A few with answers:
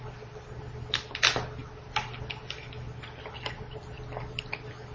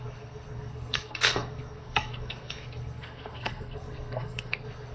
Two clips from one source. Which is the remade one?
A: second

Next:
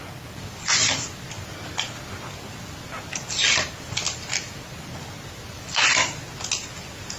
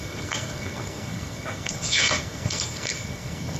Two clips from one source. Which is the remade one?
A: second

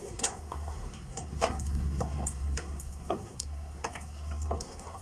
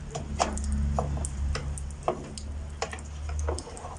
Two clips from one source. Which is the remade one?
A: first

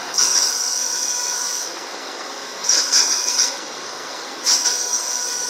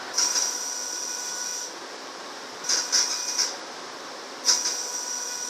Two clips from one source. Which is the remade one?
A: first